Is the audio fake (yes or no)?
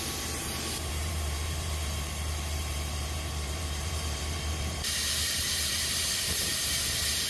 yes